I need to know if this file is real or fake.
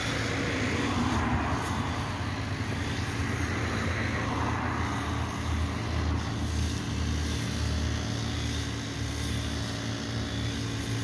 real